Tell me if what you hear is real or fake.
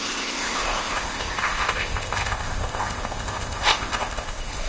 fake